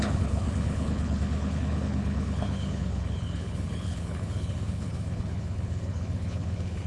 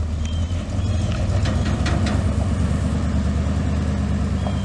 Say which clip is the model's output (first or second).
first